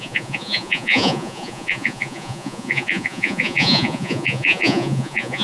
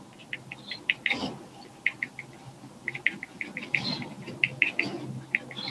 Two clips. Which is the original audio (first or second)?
second